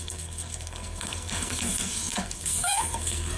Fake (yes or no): yes